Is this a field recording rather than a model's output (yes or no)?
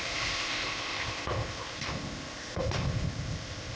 no